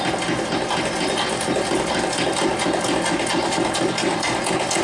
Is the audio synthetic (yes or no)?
no